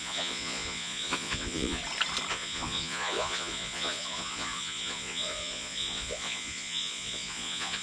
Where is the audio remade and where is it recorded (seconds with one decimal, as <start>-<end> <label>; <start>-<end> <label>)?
0.0-1.8 remade; 1.8-2.3 recorded; 2.3-7.8 remade